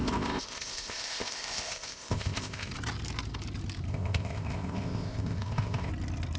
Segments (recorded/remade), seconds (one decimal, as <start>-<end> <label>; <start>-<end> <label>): 0.0-2.7 remade; 2.7-3.9 recorded; 3.9-5.9 remade; 5.9-6.4 recorded